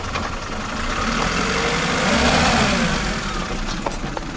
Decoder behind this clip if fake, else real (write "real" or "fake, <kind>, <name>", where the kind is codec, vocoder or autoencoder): real